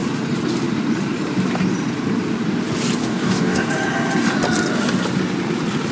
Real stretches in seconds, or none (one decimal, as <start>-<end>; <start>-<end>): 0.0-3.0; 3.7-5.9